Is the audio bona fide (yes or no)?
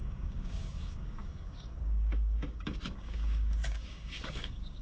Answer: no